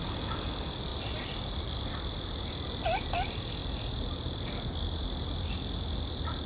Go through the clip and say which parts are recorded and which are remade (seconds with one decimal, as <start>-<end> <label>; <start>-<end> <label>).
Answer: 0.0-0.9 recorded; 0.9-1.6 remade; 1.6-6.5 recorded